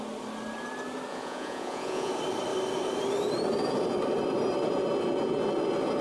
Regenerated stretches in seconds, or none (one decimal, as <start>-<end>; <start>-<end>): 1.1-2.1